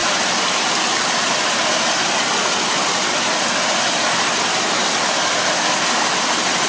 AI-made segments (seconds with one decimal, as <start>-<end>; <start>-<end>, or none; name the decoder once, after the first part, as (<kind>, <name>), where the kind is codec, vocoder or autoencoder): none